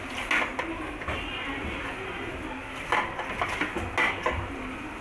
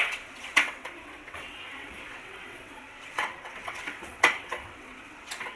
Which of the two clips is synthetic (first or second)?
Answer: second